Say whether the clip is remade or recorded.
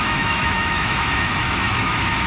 remade